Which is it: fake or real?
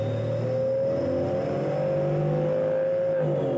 real